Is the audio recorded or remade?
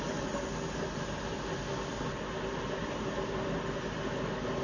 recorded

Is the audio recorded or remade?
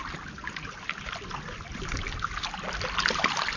recorded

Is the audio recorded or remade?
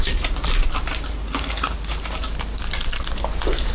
recorded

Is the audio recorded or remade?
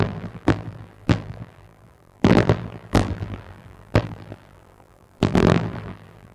remade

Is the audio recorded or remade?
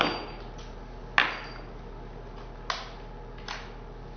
recorded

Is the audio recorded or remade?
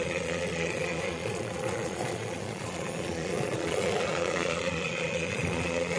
remade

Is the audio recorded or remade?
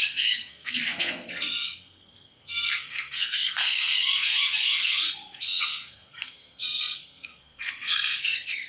remade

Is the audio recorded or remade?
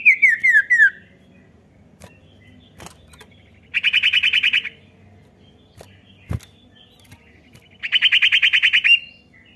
recorded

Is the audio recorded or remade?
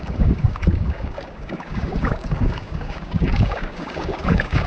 remade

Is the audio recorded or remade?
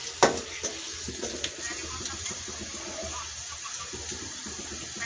recorded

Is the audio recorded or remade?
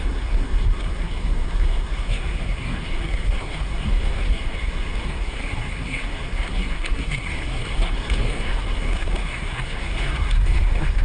remade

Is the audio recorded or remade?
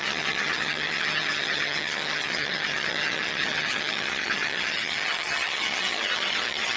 remade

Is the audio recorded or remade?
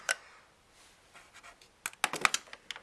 recorded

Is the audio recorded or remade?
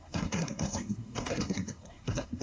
remade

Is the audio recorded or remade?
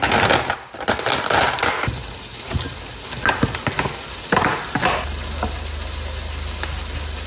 recorded